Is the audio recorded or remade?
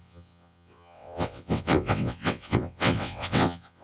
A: remade